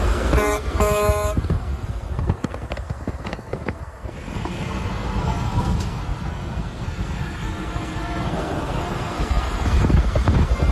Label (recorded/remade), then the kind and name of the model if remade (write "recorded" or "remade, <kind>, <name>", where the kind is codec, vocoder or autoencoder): remade, codec, SNAC